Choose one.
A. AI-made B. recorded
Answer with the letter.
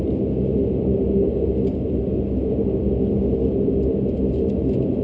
B